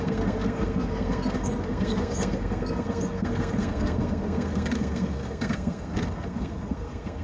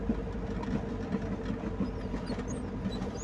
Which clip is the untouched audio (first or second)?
second